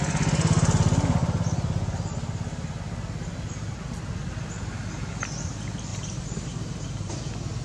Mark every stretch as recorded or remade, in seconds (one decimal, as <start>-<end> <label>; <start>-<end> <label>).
0.0-5.9 recorded; 5.9-7.1 remade; 7.1-7.6 recorded